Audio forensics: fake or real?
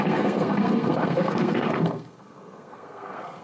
fake